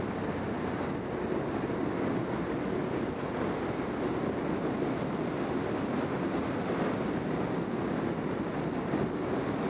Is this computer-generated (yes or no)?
no